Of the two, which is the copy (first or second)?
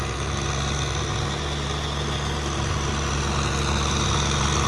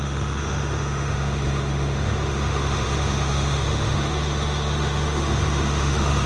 second